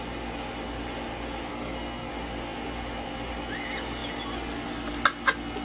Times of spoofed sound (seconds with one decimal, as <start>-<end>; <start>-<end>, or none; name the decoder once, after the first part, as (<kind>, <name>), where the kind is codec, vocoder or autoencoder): 1.5-2.1 (codec, SNAC)